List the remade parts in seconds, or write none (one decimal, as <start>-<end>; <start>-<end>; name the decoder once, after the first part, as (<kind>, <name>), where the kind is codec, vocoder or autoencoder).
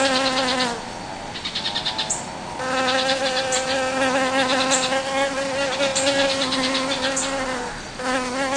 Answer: none